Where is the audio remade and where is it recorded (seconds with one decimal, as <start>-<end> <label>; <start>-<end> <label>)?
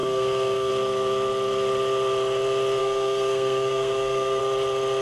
0.0-0.7 remade; 0.7-2.8 recorded; 2.8-4.4 remade; 4.4-5.0 recorded